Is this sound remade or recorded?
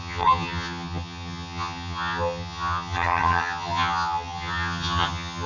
remade